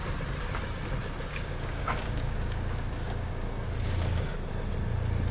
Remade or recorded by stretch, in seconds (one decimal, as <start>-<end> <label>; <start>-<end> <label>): 0.0-1.3 recorded; 1.3-4.5 remade; 4.5-5.3 recorded